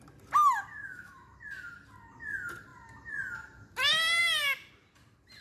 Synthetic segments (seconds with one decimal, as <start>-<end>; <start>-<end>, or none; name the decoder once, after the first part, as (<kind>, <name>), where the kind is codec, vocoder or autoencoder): 0.7-1.4 (autoencoder, DAC-VAE)